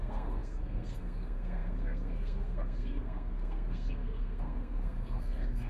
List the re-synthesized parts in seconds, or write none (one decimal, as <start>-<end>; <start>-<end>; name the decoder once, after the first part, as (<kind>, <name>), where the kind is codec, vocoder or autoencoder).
0.0-5.7 (codec, SNAC)